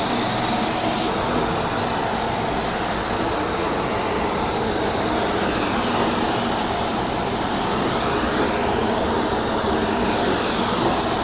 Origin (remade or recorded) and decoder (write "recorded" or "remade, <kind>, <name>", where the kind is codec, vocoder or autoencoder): recorded